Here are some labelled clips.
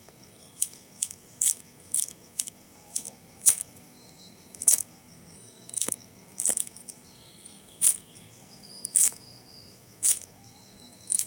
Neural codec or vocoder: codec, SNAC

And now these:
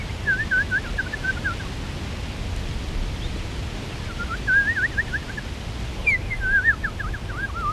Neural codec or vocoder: none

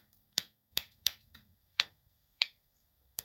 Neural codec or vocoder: codec, SNAC